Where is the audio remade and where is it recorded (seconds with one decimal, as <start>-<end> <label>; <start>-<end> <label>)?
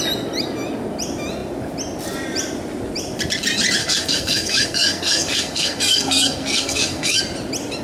0.0-3.8 recorded; 3.8-7.2 remade; 7.2-7.8 recorded